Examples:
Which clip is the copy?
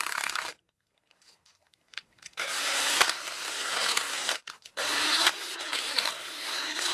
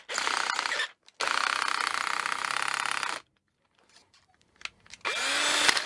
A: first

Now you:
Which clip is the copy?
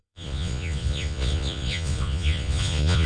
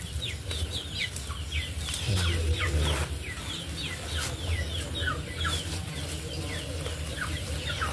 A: first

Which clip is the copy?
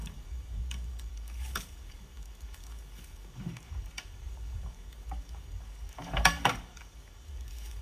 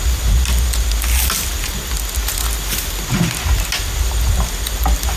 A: first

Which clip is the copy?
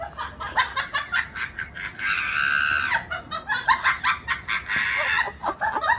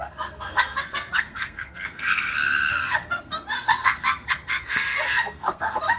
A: second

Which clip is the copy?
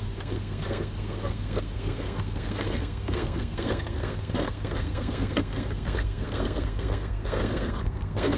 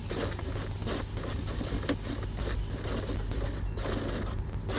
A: first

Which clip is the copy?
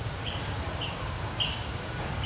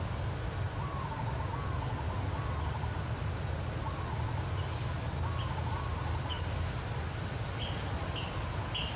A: first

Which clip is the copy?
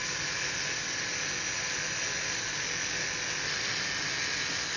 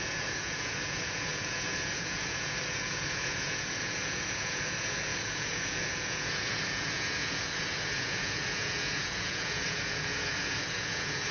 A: second